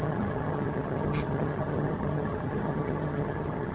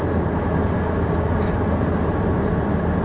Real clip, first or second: second